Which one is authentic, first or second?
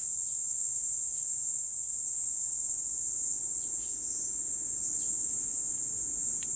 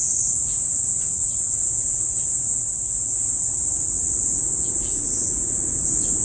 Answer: first